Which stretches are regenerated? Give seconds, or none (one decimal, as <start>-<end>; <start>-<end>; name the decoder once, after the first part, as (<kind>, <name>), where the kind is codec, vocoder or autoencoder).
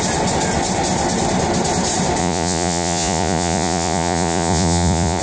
2.2-5.2 (vocoder, Vocos)